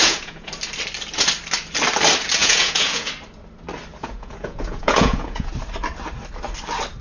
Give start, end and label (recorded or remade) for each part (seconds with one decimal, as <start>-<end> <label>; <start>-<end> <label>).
0.0-0.5 remade; 0.5-2.4 recorded; 2.4-3.1 remade; 3.1-4.0 recorded; 4.0-5.5 remade; 5.5-7.0 recorded